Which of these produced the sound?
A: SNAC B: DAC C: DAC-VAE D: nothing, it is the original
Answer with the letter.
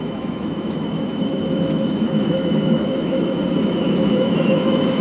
C